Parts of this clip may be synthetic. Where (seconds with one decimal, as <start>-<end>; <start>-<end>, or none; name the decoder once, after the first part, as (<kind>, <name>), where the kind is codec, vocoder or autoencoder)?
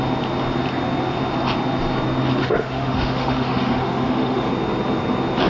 2.4-4.5 (autoencoder, DAC-VAE)